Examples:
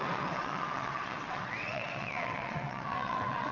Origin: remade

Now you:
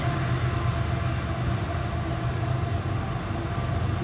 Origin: recorded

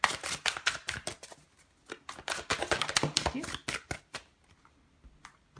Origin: recorded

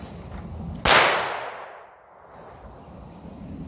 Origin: recorded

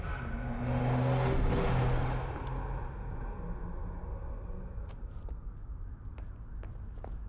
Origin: recorded